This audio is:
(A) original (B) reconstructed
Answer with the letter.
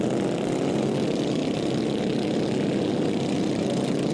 A